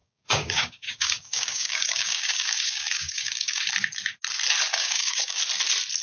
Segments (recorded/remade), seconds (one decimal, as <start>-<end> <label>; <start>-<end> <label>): 0.0-3.6 remade; 3.6-4.7 recorded; 4.7-5.4 remade; 5.4-6.0 recorded